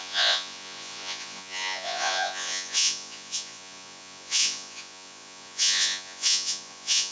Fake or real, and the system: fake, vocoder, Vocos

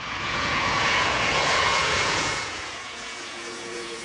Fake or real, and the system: fake, vocoder, Vocos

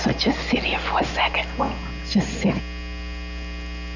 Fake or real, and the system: real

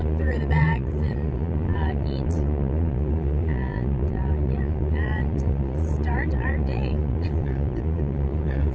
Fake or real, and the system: fake, vocoder, Vocos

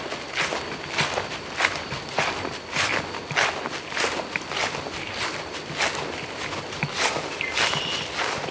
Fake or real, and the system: real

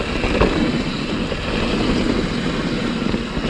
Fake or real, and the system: real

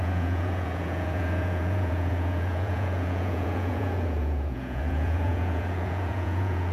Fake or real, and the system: fake, vocoder, Vocos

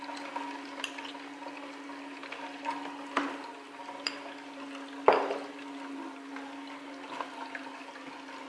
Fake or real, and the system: real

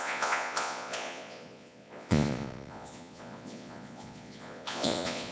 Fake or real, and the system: fake, vocoder, Vocos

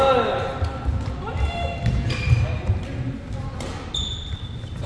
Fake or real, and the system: real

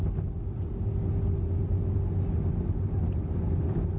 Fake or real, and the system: real